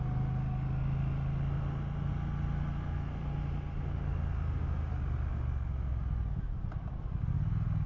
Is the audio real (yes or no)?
yes